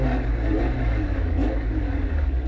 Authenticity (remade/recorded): remade